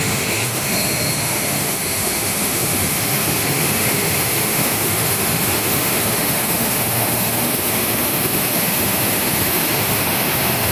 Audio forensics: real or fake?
fake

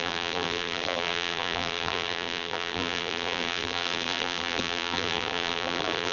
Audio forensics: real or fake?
fake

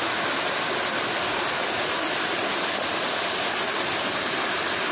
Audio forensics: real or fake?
real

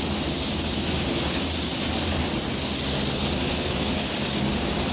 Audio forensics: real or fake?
real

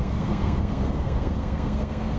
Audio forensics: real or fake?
fake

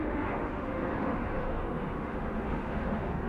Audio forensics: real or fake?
fake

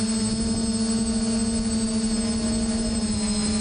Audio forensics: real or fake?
real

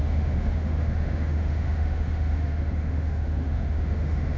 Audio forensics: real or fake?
fake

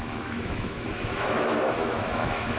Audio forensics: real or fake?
fake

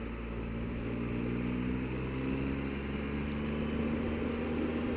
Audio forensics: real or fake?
real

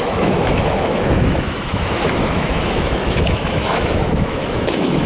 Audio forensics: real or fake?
fake